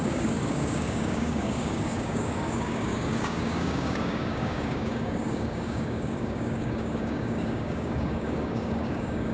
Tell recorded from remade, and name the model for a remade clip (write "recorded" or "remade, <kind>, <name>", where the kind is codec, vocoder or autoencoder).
remade, codec, DAC